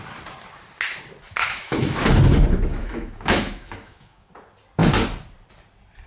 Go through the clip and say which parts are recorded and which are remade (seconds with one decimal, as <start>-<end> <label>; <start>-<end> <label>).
0.0-1.4 recorded; 1.4-2.1 remade; 2.1-2.7 recorded; 2.7-4.3 remade; 4.3-6.1 recorded